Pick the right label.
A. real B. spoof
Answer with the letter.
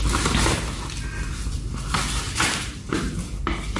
A